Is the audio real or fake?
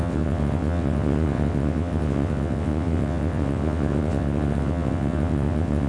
fake